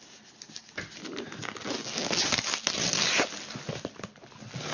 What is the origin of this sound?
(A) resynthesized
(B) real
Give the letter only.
B